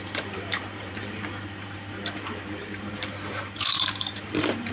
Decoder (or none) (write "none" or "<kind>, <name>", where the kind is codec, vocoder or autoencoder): vocoder, BigVGAN v2